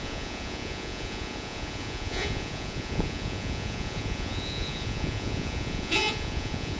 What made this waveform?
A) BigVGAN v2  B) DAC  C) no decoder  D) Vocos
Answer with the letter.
D